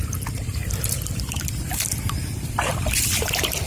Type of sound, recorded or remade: remade